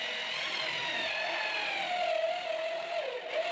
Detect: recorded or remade recorded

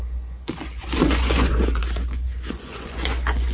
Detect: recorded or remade remade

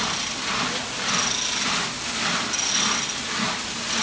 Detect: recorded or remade recorded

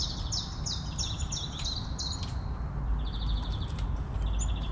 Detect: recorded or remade recorded